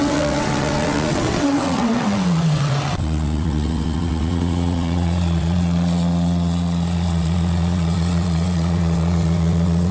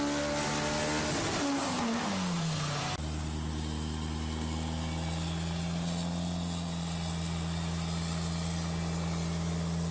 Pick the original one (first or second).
second